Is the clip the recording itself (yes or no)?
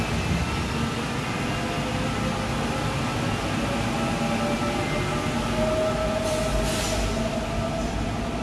yes